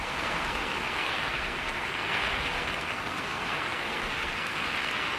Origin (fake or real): fake